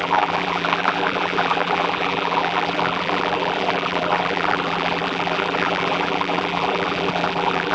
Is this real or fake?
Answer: fake